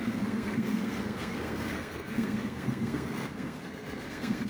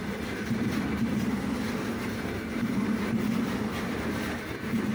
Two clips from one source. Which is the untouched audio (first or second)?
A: second